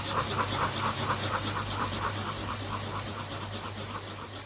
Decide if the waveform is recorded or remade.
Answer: recorded